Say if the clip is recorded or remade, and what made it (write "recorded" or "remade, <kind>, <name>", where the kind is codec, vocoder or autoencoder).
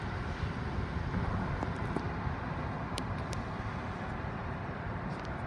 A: recorded